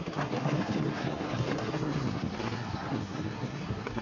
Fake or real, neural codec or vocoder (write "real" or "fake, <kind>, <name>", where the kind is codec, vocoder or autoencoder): fake, codec, SNAC